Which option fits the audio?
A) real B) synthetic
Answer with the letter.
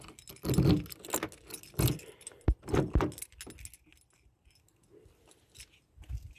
A